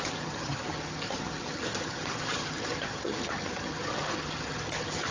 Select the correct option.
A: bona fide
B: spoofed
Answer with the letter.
B